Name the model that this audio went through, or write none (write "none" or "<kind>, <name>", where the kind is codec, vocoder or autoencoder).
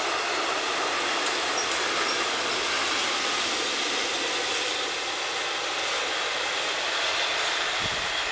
none